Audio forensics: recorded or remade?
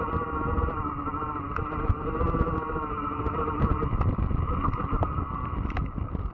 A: recorded